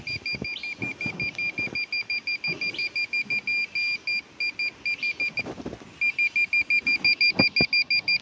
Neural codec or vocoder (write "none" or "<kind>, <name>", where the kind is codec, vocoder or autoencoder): none